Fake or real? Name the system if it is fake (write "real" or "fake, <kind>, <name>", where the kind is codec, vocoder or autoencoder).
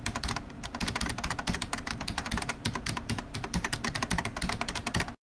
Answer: fake, vocoder, BigVGAN v2